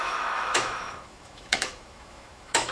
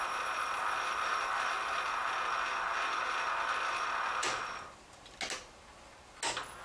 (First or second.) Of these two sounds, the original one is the second